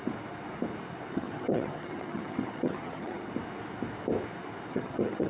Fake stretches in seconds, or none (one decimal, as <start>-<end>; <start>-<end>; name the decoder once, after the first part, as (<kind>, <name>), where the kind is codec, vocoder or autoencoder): 1.1-3.3 (vocoder, HiFi-GAN); 4.7-5.3